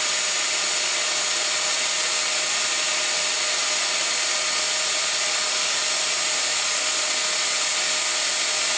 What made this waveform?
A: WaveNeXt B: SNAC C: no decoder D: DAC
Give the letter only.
C